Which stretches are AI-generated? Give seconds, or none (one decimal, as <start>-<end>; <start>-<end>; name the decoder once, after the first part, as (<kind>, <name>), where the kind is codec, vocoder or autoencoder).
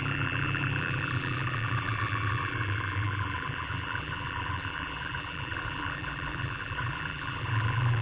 0.0-8.0 (vocoder, BigVGAN v2)